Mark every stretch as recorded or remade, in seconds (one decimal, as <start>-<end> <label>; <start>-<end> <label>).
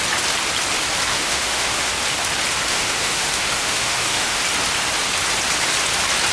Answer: 0.0-1.1 recorded; 1.1-1.9 remade; 1.9-2.7 recorded; 2.7-4.4 remade; 4.4-6.3 recorded